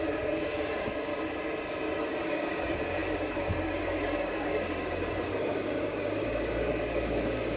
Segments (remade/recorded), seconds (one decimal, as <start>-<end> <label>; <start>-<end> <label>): 0.0-1.1 remade; 1.1-2.0 recorded; 2.0-7.6 remade